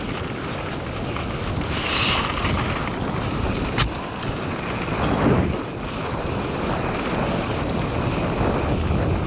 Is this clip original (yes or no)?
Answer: yes